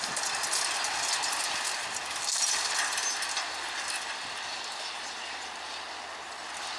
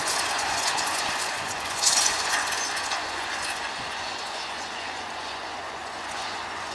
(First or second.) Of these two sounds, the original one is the first